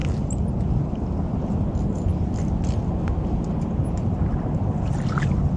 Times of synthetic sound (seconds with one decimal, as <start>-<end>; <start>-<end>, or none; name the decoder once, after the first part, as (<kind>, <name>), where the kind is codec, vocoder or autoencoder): 2.1-2.8 (vocoder, BigVGAN v2)